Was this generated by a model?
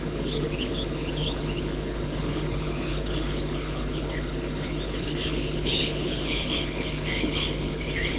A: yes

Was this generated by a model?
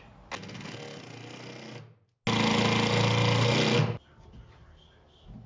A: no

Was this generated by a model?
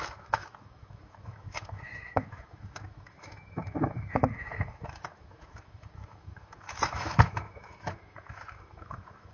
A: yes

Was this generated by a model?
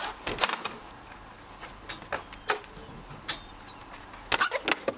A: no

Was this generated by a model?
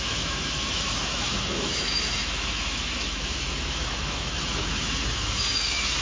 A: yes